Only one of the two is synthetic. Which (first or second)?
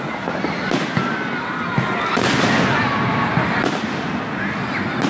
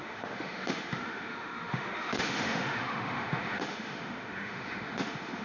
second